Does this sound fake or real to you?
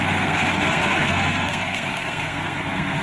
fake